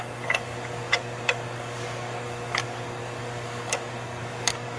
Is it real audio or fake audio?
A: fake